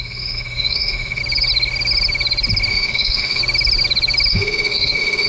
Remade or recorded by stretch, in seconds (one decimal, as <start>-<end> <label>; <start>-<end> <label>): 0.0-1.2 remade; 1.2-2.7 recorded; 2.7-3.4 remade; 3.4-4.3 recorded; 4.3-5.3 remade

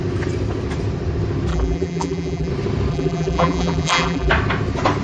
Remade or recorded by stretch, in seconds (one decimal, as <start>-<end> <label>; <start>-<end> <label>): 0.0-1.5 recorded; 1.5-2.5 remade; 2.5-2.9 recorded; 2.9-4.3 remade; 4.3-5.0 recorded

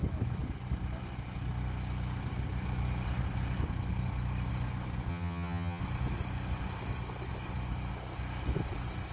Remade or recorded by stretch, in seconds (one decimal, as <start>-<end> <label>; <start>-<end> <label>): 0.0-5.1 recorded; 5.1-5.8 remade; 5.8-9.1 recorded

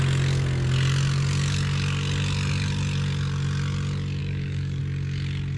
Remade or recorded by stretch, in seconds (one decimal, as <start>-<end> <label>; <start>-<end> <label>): 0.0-4.2 recorded; 4.2-4.8 remade; 4.8-5.6 recorded